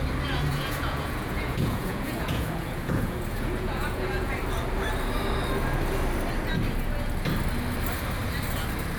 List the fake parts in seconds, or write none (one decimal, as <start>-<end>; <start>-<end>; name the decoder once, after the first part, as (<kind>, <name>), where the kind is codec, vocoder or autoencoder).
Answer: 0.5-4.4 (vocoder, Vocos)

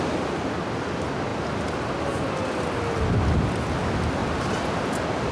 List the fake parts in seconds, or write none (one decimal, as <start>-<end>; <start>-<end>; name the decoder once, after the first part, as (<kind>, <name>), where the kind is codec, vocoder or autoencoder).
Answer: none

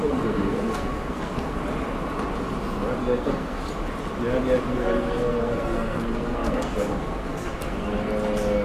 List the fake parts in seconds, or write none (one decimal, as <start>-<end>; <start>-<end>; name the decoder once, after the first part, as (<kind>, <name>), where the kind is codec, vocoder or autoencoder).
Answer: 0.0-1.6 (codec, SNAC); 3.0-3.7; 4.7-8.1

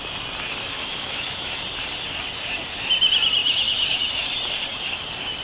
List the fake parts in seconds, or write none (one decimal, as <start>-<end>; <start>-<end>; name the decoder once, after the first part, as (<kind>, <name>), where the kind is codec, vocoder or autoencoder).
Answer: 0.6-1.6 (autoencoder, DAC-VAE); 3.4-4.0

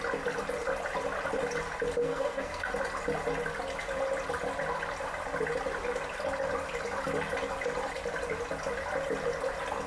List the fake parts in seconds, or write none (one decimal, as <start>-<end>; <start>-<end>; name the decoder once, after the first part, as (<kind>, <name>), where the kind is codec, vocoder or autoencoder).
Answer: 2.0-2.7 (codec, SNAC)

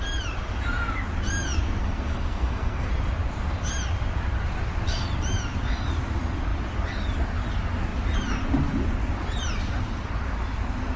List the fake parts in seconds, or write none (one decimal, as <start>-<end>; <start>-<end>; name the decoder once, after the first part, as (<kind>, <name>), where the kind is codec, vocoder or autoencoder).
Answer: 1.8-2.9 (codec, SNAC)